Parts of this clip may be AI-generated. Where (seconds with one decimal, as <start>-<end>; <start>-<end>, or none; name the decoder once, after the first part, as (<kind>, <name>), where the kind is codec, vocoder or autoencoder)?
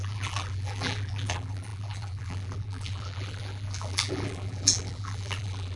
0.0-5.8 (vocoder, BigVGAN v2)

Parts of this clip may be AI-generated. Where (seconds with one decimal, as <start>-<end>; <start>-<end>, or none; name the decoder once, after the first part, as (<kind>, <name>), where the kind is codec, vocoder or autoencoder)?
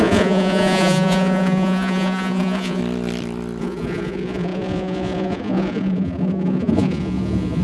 0.0-2.8 (vocoder, Vocos); 3.6-7.6